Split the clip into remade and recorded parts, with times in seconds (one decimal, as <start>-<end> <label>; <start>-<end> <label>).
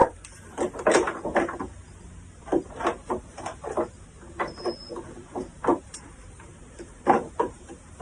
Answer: 0.0-5.7 recorded; 5.7-8.0 remade